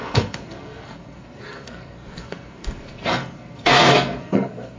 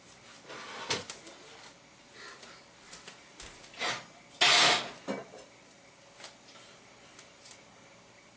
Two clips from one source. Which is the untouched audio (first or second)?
second